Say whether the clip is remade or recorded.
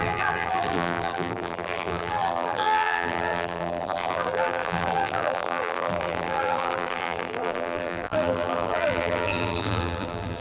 remade